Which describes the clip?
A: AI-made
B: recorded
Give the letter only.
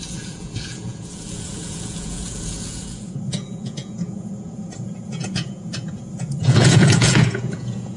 A